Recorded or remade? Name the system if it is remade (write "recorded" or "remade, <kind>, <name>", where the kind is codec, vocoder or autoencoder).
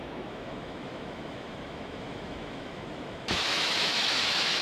remade, autoencoder, DAC-VAE